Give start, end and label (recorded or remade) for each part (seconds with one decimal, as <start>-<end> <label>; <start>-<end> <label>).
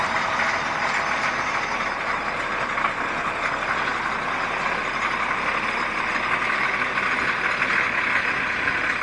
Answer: 0.0-3.9 remade; 3.9-4.8 recorded; 4.8-9.0 remade